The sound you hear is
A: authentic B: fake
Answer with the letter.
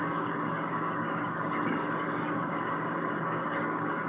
B